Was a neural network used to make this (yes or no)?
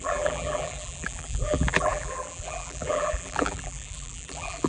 yes